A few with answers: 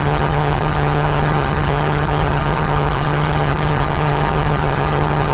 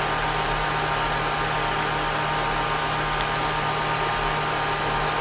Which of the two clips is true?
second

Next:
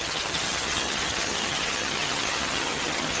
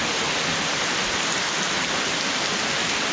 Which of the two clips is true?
second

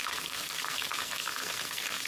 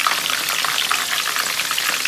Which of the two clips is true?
second